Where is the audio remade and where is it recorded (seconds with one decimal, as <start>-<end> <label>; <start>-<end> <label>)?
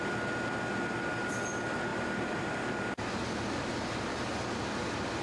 0.0-1.9 recorded; 1.9-2.9 remade; 2.9-4.3 recorded; 4.3-5.2 remade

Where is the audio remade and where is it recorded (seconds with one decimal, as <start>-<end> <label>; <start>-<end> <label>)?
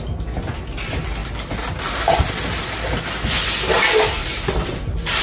0.0-4.2 recorded; 4.2-5.2 remade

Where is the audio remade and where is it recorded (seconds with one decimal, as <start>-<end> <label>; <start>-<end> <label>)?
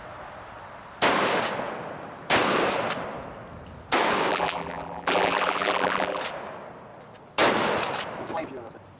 0.0-4.3 recorded; 4.3-6.2 remade; 6.2-9.0 recorded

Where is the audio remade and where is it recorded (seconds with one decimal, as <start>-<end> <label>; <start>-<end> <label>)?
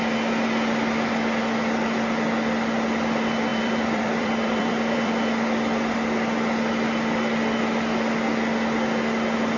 0.0-3.5 recorded; 3.5-5.1 remade; 5.1-9.6 recorded